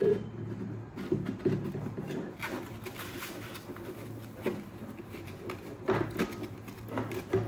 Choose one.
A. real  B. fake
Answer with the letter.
A